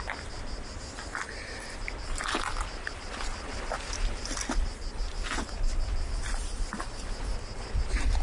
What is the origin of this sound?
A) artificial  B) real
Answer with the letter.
B